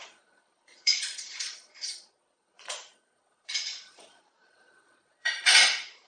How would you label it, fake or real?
fake